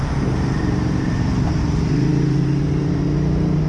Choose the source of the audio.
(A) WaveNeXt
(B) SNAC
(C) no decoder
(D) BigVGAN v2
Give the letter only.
D